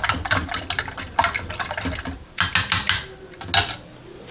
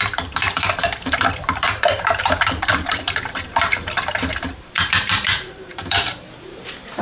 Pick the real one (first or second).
first